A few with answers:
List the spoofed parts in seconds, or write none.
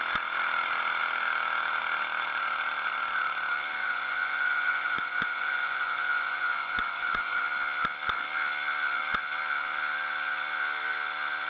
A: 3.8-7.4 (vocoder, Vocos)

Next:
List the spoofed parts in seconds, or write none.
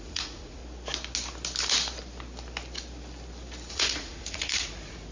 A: 0.0-0.6 (vocoder, Vocos); 3.7-5.1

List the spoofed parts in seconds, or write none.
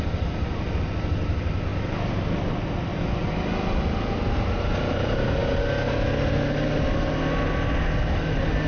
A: none